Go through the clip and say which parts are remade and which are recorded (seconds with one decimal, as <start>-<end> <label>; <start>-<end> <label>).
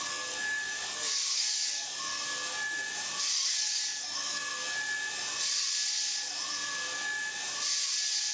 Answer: 0.0-2.1 remade; 2.1-3.2 recorded; 3.2-4.5 remade; 4.5-8.3 recorded